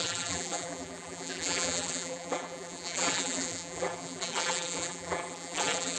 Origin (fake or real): fake